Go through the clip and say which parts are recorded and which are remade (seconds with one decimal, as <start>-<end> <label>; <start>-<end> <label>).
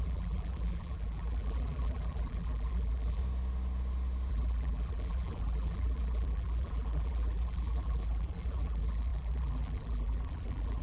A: 0.0-3.2 remade; 3.2-4.3 recorded; 4.3-10.8 remade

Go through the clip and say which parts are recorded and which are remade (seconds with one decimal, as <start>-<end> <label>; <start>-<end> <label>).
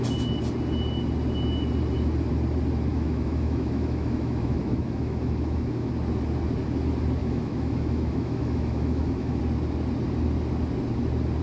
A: 0.0-2.9 recorded; 2.9-5.9 remade; 5.9-7.2 recorded; 7.2-9.4 remade; 9.4-11.4 recorded